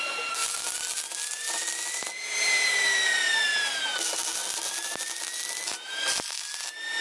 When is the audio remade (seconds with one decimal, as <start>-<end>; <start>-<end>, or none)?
none